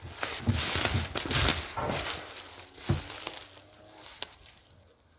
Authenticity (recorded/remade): recorded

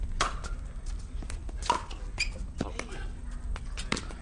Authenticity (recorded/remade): recorded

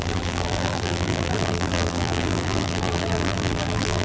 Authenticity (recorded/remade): remade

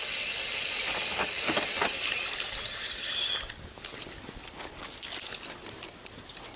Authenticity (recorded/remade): recorded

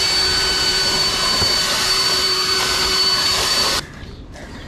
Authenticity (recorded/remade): remade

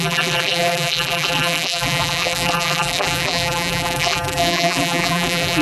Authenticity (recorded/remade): remade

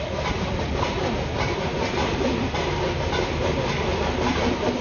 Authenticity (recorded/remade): recorded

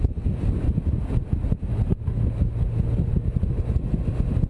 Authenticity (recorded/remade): recorded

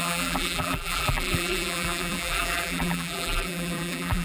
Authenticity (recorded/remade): remade